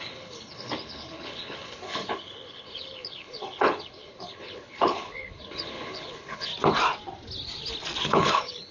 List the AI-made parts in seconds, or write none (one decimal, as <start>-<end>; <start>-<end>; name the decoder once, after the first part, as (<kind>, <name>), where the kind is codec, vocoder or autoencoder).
0.0-6.5 (codec, HILCodec); 8.1-8.7